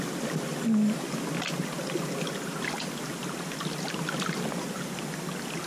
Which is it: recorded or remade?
recorded